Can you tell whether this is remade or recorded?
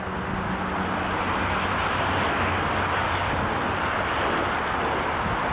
recorded